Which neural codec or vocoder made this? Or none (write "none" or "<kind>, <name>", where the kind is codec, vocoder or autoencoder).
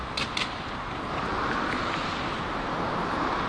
none